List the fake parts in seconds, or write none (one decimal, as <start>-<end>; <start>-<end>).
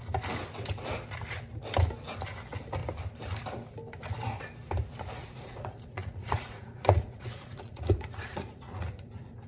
5.2-9.1